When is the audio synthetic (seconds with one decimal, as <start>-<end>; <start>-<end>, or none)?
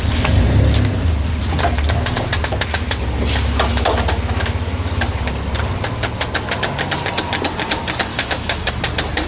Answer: 3.7-5.0; 8.1-8.7